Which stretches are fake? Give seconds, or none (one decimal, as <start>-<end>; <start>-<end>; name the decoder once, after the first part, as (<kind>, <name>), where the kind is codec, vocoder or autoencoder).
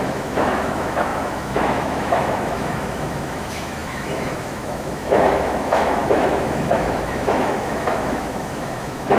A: 0.0-9.2 (autoencoder, DAC-VAE)